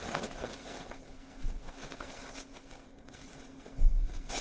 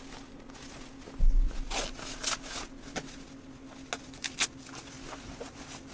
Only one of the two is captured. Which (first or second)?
second